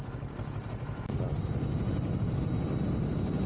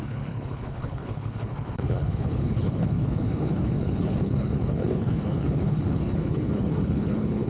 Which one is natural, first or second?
first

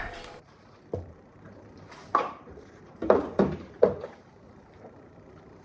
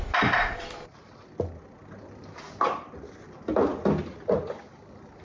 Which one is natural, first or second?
second